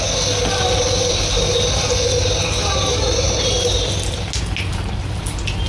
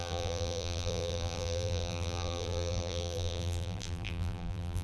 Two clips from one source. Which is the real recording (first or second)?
first